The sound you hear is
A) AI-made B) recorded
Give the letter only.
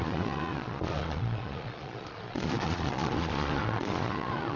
A